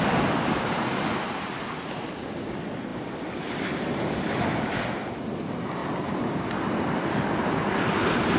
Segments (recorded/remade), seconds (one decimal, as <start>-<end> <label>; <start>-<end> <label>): 0.0-2.9 recorded; 2.9-4.6 remade; 4.6-5.8 recorded; 5.8-6.9 remade; 6.9-8.4 recorded